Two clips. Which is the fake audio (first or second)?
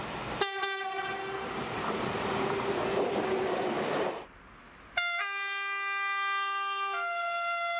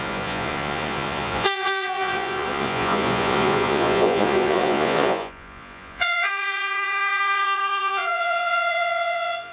second